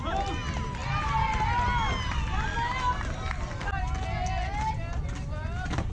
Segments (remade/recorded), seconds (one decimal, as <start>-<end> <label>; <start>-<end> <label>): 0.0-5.9 recorded